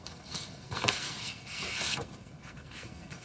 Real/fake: fake